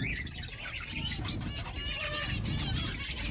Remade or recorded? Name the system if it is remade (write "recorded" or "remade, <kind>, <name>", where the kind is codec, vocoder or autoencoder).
recorded